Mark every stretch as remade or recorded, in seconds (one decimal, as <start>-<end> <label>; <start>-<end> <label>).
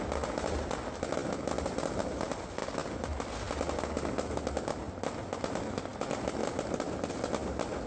0.0-7.9 recorded